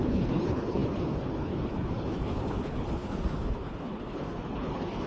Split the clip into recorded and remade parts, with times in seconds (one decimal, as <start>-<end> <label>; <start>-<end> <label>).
0.0-5.1 remade